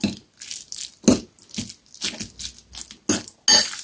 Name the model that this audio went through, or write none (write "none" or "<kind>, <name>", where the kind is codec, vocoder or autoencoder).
none